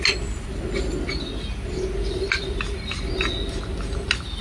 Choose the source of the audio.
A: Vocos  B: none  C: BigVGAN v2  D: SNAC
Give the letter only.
B